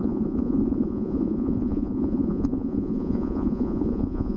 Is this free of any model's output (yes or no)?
no